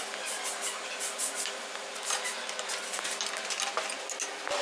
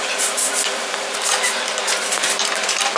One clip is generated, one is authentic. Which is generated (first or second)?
second